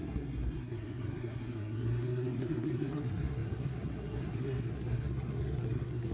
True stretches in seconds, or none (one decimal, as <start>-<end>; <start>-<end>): none